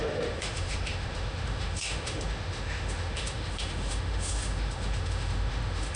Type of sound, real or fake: fake